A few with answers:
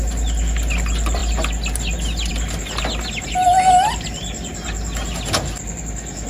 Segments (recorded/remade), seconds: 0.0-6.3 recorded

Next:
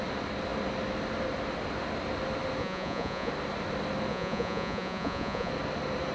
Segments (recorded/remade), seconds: 0.0-2.6 recorded; 2.6-3.3 remade; 3.3-4.1 recorded; 4.1-5.5 remade; 5.5-6.1 recorded

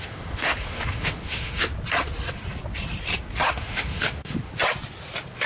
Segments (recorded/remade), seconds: 0.0-1.7 remade; 1.7-3.5 recorded; 3.5-4.5 remade; 4.5-5.5 recorded